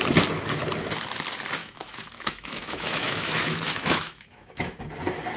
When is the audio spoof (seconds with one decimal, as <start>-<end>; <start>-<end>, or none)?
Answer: 1.6-4.8